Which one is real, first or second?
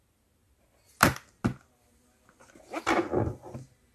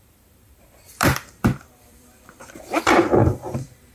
first